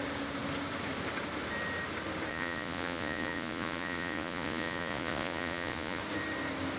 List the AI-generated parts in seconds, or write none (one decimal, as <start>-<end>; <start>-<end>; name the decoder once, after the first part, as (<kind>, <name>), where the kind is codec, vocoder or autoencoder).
2.3-6.0 (vocoder, Vocos)